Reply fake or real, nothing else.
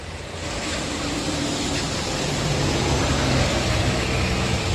fake